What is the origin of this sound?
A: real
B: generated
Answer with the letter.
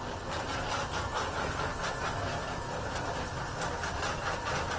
A